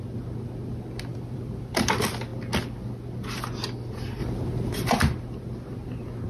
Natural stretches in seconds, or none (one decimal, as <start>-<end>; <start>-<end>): 0.0-1.1; 1.9-6.3